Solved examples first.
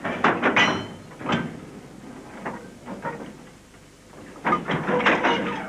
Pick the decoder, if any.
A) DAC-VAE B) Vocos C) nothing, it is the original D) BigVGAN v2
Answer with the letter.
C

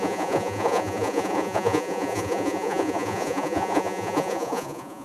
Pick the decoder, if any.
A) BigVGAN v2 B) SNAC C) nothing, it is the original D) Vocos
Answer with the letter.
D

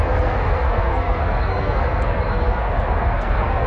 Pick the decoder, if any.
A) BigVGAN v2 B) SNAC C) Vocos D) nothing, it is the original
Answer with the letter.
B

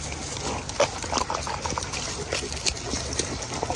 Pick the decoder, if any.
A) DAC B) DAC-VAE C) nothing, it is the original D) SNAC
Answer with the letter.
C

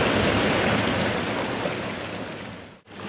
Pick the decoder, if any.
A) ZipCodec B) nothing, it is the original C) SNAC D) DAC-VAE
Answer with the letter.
B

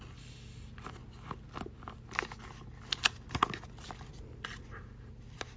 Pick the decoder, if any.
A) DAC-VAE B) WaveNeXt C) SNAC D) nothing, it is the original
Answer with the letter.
D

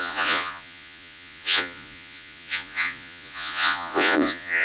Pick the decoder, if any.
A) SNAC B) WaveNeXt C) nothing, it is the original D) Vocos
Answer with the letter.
D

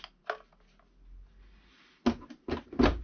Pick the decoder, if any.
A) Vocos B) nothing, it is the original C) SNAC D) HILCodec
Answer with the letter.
B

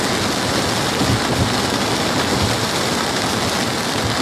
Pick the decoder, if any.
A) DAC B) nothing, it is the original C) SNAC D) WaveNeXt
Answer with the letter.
B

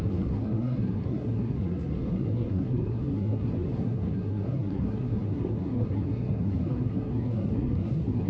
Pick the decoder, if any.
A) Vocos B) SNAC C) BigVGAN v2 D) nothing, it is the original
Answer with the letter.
B